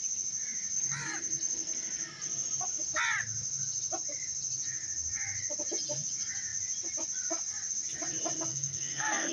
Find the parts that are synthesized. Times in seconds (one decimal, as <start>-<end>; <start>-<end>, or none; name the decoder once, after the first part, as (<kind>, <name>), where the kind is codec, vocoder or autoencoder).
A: 8.5-9.3 (codec, SNAC)